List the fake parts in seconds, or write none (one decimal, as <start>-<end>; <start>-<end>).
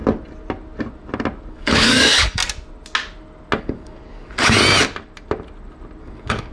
1.5-2.4; 3.6-4.6; 6.0-6.5